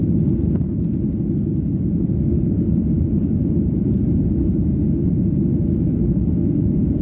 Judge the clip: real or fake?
real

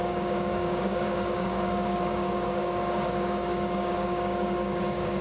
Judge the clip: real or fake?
fake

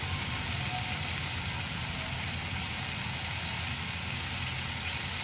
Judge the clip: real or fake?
real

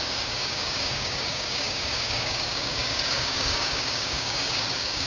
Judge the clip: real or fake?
fake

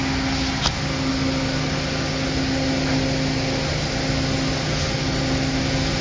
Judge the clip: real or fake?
real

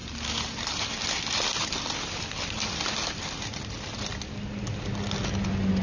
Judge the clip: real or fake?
real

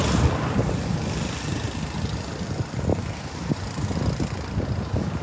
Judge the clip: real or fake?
real